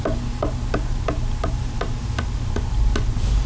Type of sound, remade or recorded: recorded